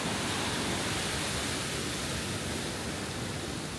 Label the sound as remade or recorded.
recorded